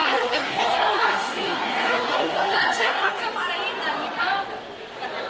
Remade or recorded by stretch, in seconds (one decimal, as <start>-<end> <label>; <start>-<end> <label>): 0.0-3.2 remade; 3.2-5.3 recorded